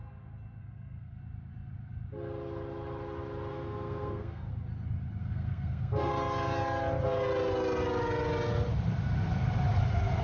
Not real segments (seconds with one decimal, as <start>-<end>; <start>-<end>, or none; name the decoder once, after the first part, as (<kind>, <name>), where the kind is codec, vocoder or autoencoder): 0.6-1.2 (codec, SNAC); 3.5-4.5; 5.2-6.1